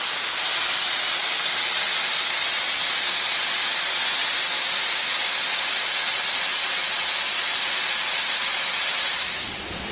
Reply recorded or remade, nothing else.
recorded